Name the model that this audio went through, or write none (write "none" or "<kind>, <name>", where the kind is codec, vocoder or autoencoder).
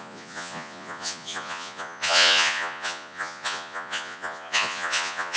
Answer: vocoder, Vocos